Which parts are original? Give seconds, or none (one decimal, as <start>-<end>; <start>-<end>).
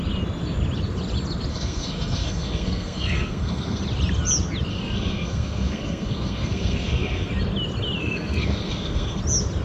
0.0-1.5; 3.8-4.7; 7.3-8.0; 9.2-9.6